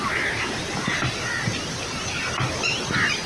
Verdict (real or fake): real